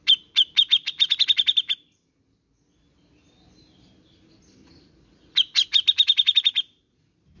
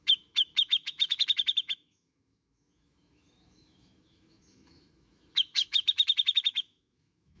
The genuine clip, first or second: first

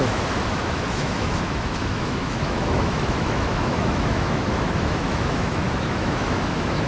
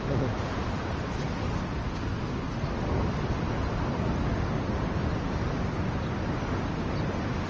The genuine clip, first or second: second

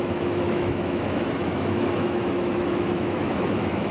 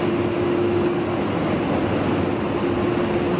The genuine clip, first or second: second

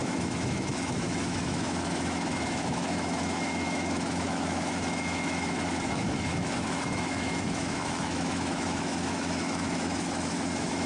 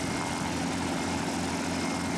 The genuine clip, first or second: second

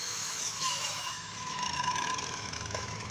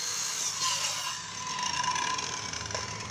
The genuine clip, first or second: second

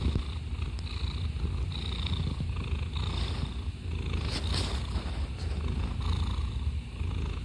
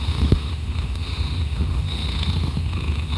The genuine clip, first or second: first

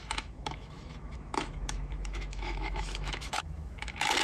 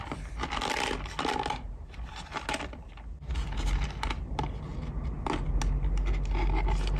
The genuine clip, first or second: second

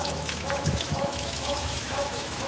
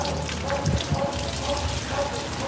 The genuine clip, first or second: second